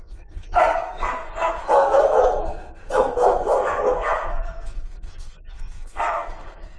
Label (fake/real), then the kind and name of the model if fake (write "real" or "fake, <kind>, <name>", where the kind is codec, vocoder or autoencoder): fake, codec, SNAC